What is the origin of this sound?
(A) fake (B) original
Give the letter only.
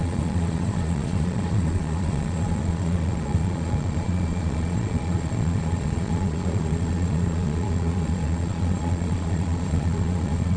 A